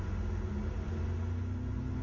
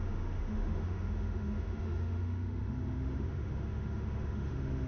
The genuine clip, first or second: first